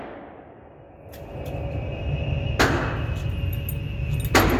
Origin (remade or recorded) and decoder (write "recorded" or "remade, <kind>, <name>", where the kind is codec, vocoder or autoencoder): recorded